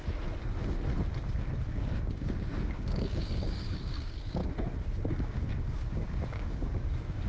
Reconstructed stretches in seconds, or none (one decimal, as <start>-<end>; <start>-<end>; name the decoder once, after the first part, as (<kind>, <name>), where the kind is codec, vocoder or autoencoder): 1.7-4.4 (codec, DAC); 5.1-7.3